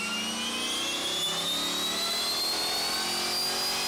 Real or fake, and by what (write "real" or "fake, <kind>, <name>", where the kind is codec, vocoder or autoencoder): real